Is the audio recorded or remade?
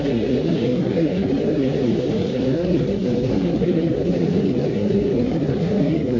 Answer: remade